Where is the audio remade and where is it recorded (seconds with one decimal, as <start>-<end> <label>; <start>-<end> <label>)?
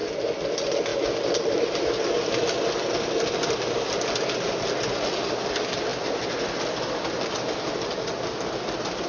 0.0-9.1 recorded